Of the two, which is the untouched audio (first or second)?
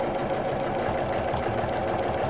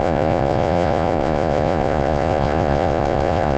first